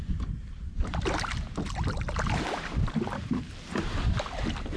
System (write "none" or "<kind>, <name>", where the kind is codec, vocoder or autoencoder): none